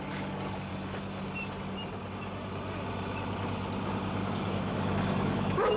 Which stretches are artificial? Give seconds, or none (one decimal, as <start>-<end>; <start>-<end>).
0.0-0.7; 4.2-5.8